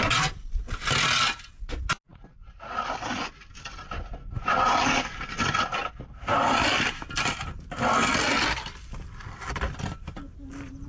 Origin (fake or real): real